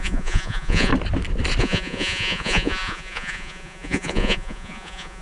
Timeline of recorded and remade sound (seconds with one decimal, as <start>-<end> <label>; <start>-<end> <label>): 0.0-0.9 remade; 0.9-1.6 recorded; 1.6-5.2 remade